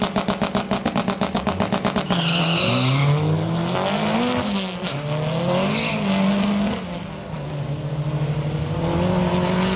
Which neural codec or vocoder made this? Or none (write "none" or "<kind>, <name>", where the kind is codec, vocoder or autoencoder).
none